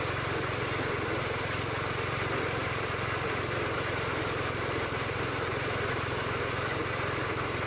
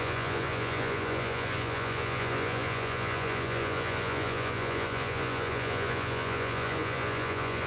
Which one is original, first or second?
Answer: first